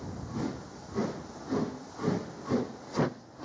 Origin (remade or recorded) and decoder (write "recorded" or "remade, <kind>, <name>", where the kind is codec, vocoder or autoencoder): recorded